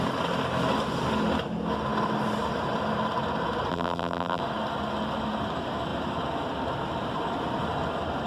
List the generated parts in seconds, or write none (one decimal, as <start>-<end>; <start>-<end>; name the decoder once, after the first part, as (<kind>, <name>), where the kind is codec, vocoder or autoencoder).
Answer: 3.7-4.4 (vocoder, BigVGAN v2)